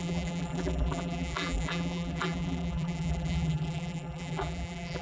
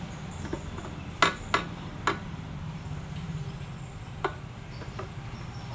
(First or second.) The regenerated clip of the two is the first